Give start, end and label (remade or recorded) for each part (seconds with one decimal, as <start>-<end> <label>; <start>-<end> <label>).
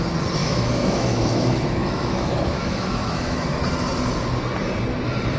0.0-0.4 recorded; 0.4-3.6 remade; 3.6-5.4 recorded